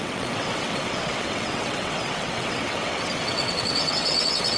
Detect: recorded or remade remade